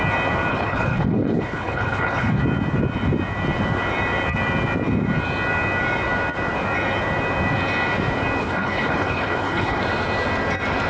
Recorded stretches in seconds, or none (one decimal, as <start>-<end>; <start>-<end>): 0.0-0.5; 2.4-8.4; 9.8-10.9